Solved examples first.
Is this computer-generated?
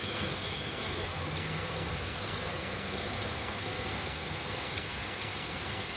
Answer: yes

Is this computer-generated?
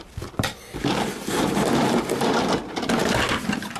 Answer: no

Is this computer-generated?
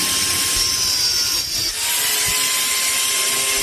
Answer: no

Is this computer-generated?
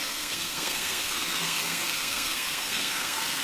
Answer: yes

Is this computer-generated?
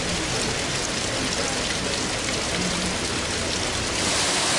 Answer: no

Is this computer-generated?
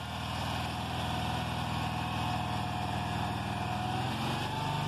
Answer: no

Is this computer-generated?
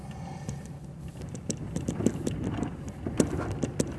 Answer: no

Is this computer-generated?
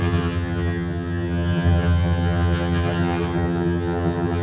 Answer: yes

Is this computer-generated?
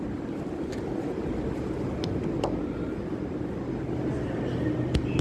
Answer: no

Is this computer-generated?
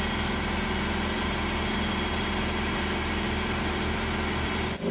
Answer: no